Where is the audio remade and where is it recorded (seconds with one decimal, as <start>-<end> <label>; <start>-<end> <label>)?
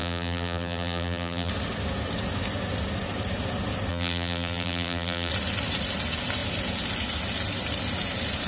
0.0-1.5 remade; 1.5-3.9 recorded; 3.9-5.3 remade; 5.3-8.5 recorded